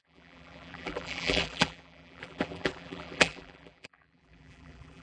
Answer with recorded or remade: remade